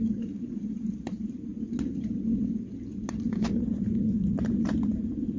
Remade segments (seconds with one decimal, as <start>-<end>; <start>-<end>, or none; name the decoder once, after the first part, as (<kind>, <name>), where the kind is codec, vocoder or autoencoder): 0.0-1.5 (vocoder, BigVGAN v2); 4.7-5.4